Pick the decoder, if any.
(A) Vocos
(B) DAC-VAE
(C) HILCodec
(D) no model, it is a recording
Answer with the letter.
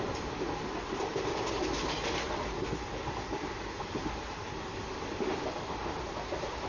D